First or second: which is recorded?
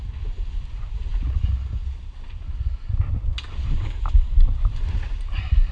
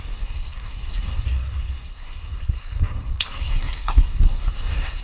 first